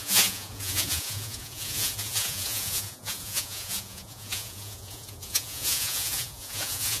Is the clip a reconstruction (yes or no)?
yes